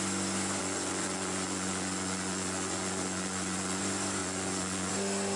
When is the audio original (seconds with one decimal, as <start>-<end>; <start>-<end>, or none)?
0.0-0.6; 3.8-4.2; 4.9-5.4